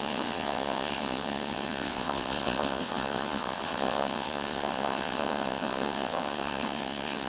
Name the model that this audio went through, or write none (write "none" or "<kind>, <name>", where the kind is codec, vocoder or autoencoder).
vocoder, WaveNeXt